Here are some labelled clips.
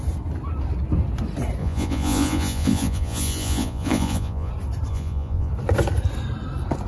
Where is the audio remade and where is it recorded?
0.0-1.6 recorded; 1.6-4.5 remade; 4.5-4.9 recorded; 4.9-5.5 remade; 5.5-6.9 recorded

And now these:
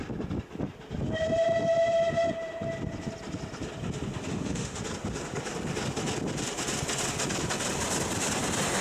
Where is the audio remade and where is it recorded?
0.0-4.3 recorded; 4.3-4.8 remade; 4.8-8.8 recorded

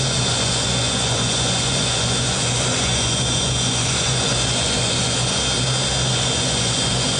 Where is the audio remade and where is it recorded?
0.0-5.4 remade; 5.4-6.1 recorded; 6.1-7.2 remade

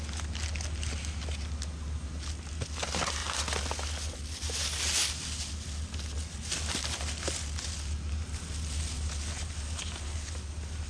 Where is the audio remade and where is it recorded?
0.0-10.9 recorded

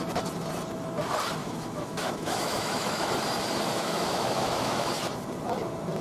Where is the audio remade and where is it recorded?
0.0-1.4 recorded; 1.4-3.1 remade; 3.1-3.7 recorded; 3.7-4.9 remade; 4.9-6.0 recorded